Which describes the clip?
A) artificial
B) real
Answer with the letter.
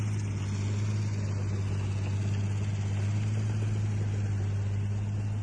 B